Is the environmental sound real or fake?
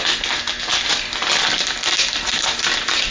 real